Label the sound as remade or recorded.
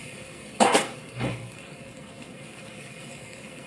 remade